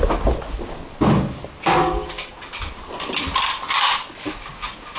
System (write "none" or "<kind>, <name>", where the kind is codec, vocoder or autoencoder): none